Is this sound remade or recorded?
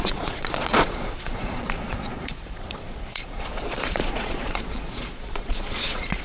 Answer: remade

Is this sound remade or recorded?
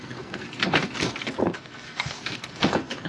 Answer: remade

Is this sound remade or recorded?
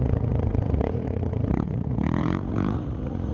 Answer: remade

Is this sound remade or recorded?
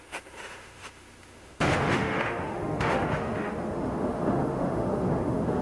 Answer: remade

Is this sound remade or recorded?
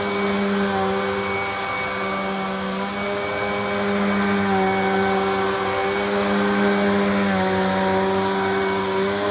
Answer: recorded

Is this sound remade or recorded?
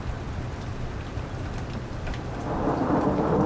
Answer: recorded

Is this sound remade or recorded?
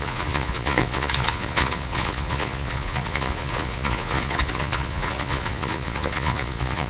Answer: remade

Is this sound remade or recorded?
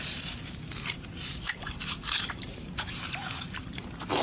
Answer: remade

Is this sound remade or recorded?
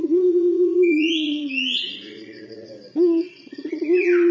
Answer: remade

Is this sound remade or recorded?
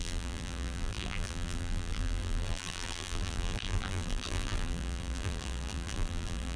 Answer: remade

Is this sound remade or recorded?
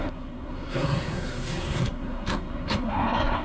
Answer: remade